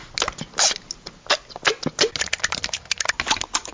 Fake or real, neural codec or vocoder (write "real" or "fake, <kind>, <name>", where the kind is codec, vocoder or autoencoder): real